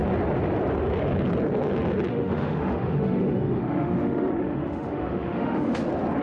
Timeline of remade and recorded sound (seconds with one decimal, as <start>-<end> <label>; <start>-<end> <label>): 0.0-2.1 recorded; 2.1-5.8 remade; 5.8-6.2 recorded